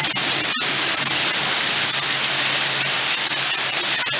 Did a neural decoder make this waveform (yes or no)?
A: no